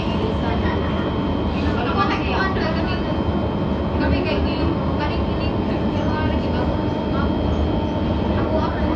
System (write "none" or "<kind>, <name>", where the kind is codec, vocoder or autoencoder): none